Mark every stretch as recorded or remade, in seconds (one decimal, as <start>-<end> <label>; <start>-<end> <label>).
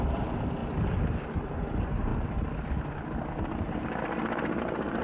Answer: 0.0-0.6 remade; 0.6-1.6 recorded; 1.6-2.1 remade; 2.1-4.6 recorded; 4.6-5.0 remade